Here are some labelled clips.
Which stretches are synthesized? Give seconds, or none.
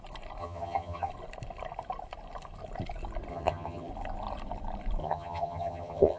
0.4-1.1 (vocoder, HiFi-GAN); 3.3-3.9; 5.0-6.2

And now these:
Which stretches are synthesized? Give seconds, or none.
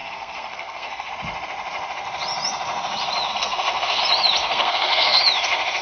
0.0-1.1 (codec, SNAC); 3.3-4.0; 4.4-5.2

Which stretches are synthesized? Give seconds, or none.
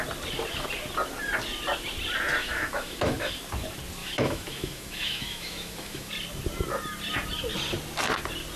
2.4-3.3 (autoencoder, DAC-VAE); 4.0-6.1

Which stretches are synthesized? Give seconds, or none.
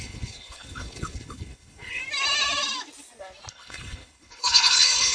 0.0-2.0 (codec, HILCodec); 3.5-5.1